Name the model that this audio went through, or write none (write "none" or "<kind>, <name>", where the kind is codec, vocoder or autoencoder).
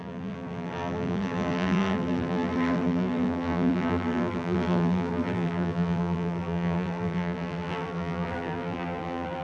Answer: vocoder, BigVGAN v2